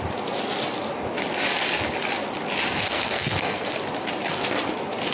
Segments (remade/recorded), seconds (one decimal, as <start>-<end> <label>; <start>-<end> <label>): 0.0-2.8 recorded; 2.8-3.7 remade; 3.7-5.1 recorded

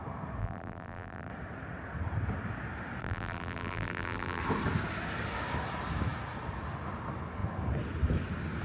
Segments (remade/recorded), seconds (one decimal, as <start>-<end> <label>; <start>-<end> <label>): 0.0-0.4 recorded; 0.4-1.3 remade; 1.3-3.0 recorded; 3.0-4.4 remade; 4.4-8.6 recorded

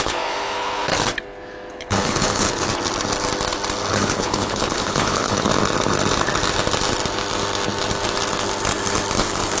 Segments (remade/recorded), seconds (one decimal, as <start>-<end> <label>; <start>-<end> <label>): 0.0-0.9 remade; 0.9-1.7 recorded; 1.7-2.7 remade; 2.7-3.9 recorded; 3.9-5.5 remade; 5.5-9.2 recorded; 9.2-9.6 remade

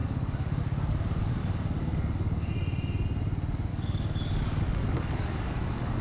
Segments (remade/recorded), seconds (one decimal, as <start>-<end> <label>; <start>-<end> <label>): 0.0-0.6 remade; 0.6-1.4 recorded; 1.4-2.5 remade; 2.5-3.7 recorded; 3.7-6.0 remade

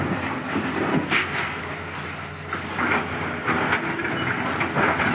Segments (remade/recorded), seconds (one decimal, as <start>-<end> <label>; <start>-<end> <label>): 0.0-0.9 recorded; 0.9-1.6 remade; 1.6-5.1 recorded

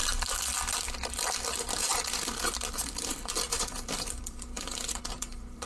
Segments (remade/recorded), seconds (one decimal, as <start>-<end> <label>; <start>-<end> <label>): 0.0-2.7 recorded; 2.7-5.7 remade

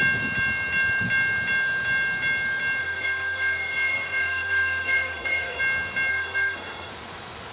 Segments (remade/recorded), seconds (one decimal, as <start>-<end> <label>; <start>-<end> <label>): 0.0-2.8 recorded; 2.8-5.6 remade; 5.6-6.1 recorded; 6.1-6.9 remade; 6.9-7.5 recorded

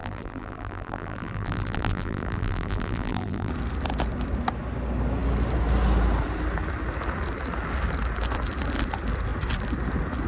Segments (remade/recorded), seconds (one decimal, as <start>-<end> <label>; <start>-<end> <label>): 0.0-3.5 remade; 3.5-10.3 recorded